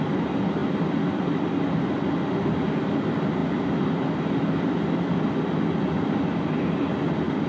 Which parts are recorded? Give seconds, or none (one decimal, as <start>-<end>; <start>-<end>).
0.0-7.5